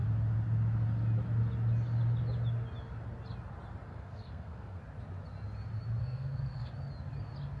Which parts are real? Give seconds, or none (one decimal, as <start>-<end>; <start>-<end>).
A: 0.0-3.9; 4.8-6.0; 6.7-7.6